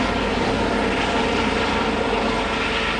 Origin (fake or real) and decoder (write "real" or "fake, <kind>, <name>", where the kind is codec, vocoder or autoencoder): real